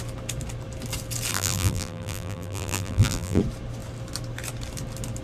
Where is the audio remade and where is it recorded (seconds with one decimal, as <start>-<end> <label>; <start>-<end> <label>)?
0.0-1.3 recorded; 1.3-3.4 remade; 3.4-5.2 recorded